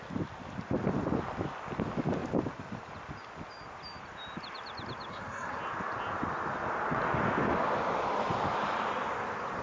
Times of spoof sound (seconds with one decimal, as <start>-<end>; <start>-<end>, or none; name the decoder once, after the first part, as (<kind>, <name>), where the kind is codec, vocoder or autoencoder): 5.1-5.6 (codec, SNAC)